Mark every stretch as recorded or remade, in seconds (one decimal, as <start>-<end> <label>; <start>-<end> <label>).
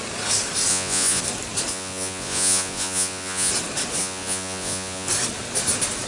0.0-0.7 recorded; 0.7-1.2 remade; 1.2-1.7 recorded; 1.7-3.5 remade; 3.5-4.0 recorded; 4.0-5.1 remade; 5.1-6.1 recorded